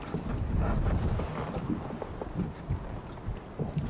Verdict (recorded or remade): recorded